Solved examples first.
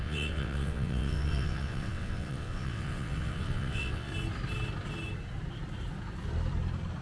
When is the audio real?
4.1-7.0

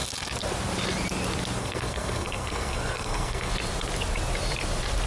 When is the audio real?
0.0-1.6; 3.5-5.1

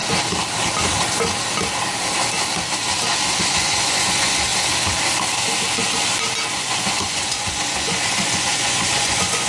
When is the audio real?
0.0-3.4; 4.5-6.5

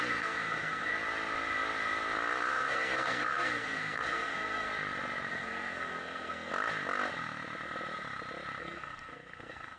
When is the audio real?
0.9-2.5; 4.7-5.3; 6.5-8.6

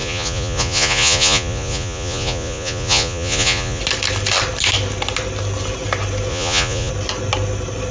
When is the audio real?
3.8-6.3; 6.9-7.9

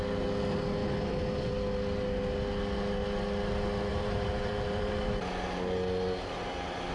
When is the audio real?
0.0-3.9; 5.1-6.9

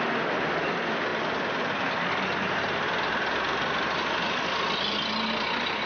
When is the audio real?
0.0-5.9